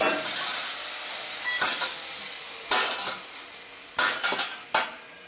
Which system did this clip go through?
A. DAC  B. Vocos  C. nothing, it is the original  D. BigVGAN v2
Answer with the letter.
C